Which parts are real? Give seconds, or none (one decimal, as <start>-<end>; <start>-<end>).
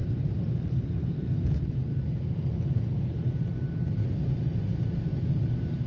0.0-5.9